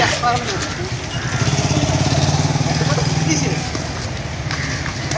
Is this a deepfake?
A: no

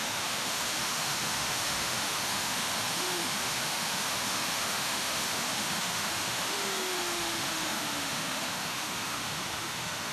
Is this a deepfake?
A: yes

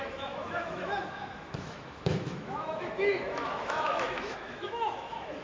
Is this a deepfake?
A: yes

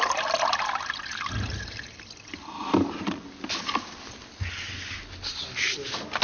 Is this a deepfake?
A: no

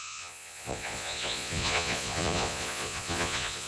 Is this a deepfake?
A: yes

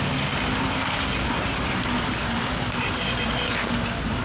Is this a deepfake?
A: no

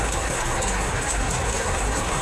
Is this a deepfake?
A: yes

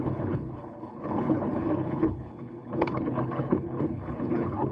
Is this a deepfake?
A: yes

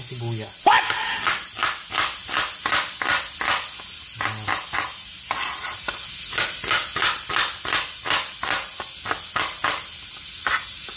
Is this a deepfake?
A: no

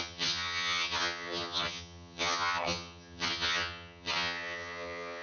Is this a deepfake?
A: yes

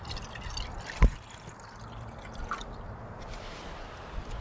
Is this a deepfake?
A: no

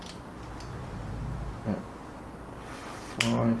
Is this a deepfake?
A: no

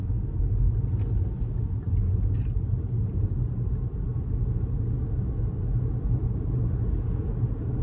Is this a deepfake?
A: no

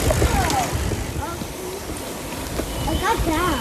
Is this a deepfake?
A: no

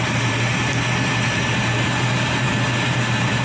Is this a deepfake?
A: yes